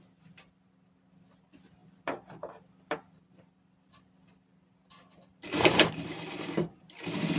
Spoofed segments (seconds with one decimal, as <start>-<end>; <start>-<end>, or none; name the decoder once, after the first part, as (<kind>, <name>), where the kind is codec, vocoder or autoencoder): 5.7-6.8 (vocoder, BigVGAN v2)